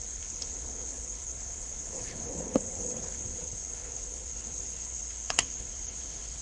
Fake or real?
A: fake